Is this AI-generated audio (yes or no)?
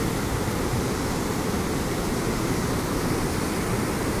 yes